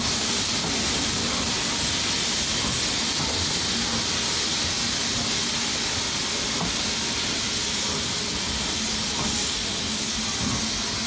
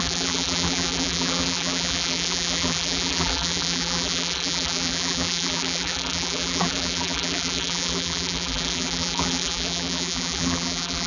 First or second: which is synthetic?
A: second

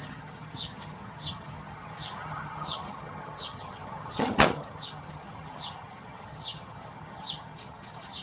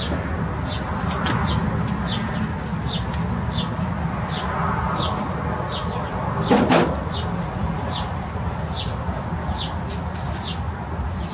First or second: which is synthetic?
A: first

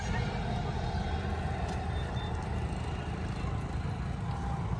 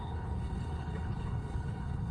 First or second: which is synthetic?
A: second